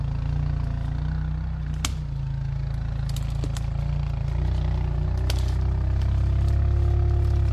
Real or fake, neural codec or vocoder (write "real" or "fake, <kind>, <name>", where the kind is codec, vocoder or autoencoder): real